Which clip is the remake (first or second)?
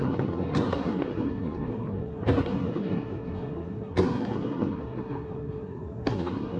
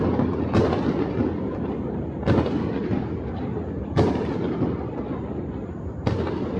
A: first